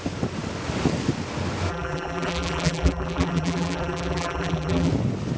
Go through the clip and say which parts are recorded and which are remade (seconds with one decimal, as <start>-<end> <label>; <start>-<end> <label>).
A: 0.0-1.7 recorded; 1.7-4.9 remade; 4.9-5.4 recorded